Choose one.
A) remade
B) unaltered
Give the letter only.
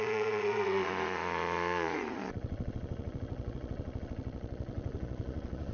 A